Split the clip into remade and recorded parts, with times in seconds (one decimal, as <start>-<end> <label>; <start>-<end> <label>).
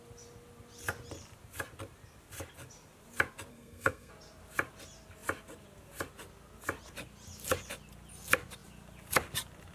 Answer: 0.0-3.5 recorded; 3.5-4.1 remade; 4.1-9.7 recorded